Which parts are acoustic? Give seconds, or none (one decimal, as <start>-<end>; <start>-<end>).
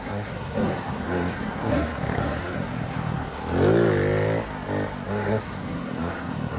3.4-5.1